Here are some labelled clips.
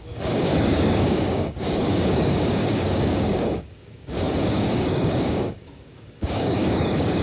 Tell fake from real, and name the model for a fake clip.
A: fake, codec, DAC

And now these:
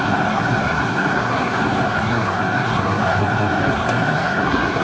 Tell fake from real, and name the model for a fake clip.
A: fake, codec, SNAC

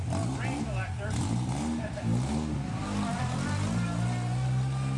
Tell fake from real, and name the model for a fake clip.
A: real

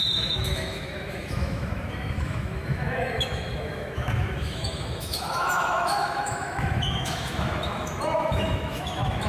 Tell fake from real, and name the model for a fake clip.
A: fake, autoencoder, DAC-VAE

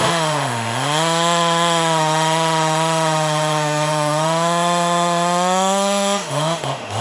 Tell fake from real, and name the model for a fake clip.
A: fake, autoencoder, DAC-VAE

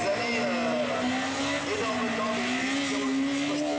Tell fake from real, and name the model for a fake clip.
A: real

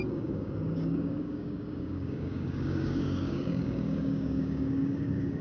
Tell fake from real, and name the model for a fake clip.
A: fake, codec, DAC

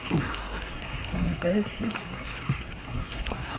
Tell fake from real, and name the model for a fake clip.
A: fake, codec, SNAC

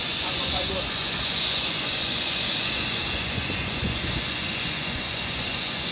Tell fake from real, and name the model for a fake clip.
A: fake, vocoder, Vocos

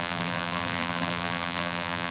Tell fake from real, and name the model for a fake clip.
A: fake, vocoder, BigVGAN v2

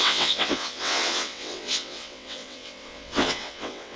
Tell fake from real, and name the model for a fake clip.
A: fake, vocoder, WaveNeXt